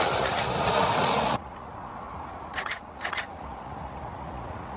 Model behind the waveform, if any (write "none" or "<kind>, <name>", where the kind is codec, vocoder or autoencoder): vocoder, Vocos